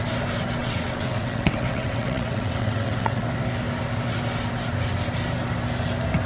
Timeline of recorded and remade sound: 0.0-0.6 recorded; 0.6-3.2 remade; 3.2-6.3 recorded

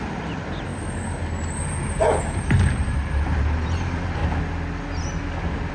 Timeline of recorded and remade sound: 0.0-0.7 remade; 0.7-1.6 recorded; 1.6-4.2 remade; 4.2-5.7 recorded